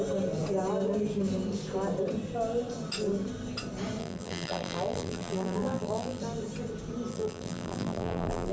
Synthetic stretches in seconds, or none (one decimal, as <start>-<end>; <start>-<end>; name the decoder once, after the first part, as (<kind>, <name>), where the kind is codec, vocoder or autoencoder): 4.0-6.2 (vocoder, BigVGAN v2); 7.1-8.5